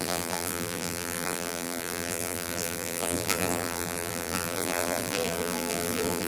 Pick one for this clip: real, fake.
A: fake